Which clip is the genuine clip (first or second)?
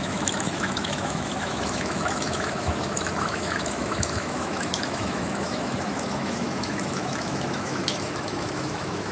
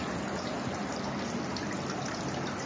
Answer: second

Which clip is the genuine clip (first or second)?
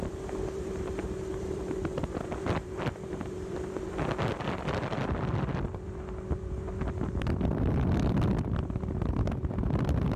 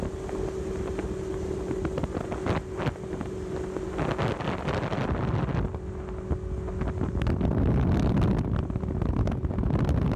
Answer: second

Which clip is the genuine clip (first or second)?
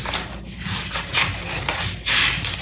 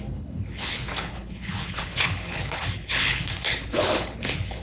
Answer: first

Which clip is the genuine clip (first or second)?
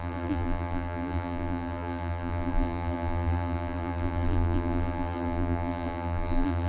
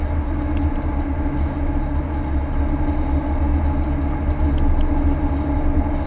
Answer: second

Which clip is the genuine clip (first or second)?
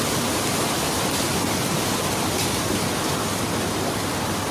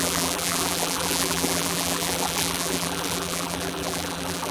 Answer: first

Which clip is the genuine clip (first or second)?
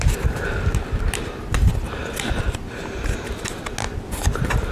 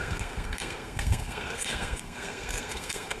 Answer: first